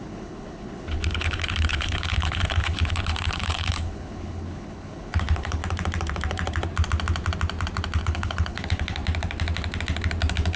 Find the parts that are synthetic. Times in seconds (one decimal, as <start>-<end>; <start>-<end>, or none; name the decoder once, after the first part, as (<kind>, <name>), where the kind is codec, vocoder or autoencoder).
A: 0.0-5.6 (codec, HILCodec); 8.0-9.0